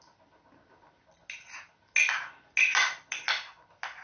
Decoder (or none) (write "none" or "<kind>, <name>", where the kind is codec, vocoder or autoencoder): none